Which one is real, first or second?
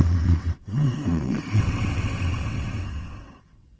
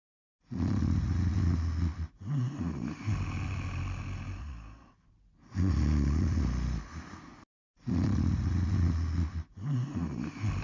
second